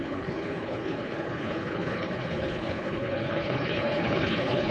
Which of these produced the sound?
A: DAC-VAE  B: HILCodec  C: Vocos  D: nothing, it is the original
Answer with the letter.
B